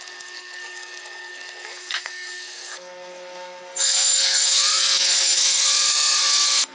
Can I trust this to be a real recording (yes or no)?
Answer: no